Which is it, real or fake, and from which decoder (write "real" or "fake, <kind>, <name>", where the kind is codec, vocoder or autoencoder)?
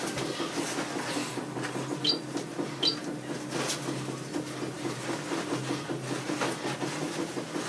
real